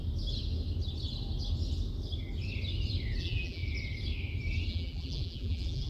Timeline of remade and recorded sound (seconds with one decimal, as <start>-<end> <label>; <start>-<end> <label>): 0.0-3.2 recorded; 3.2-3.6 remade; 3.6-4.7 recorded; 4.7-5.9 remade